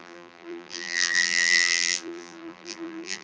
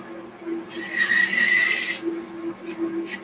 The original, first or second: second